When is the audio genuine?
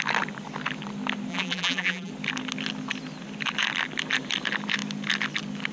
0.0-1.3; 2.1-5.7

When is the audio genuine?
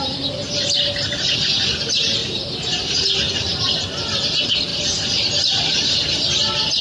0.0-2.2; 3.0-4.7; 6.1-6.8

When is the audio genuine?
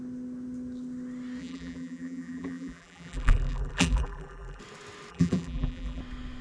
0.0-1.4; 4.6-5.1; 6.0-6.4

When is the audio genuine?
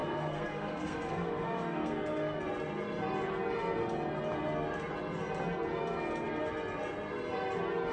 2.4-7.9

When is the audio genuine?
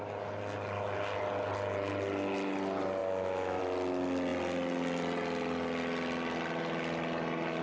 0.0-3.0; 3.6-7.6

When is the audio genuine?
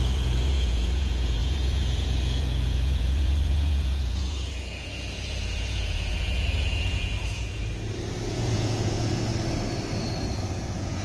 7.6-8.3; 9.3-10.5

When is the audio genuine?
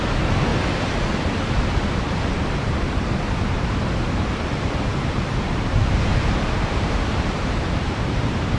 0.5-1.4